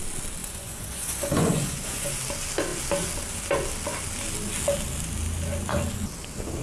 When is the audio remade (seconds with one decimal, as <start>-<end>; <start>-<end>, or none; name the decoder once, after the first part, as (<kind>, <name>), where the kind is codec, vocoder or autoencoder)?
0.4-2.1 (vocoder, Vocos)